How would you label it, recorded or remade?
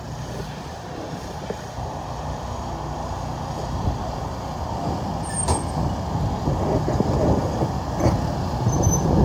recorded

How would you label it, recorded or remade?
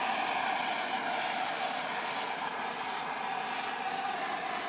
recorded